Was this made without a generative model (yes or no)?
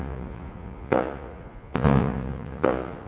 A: no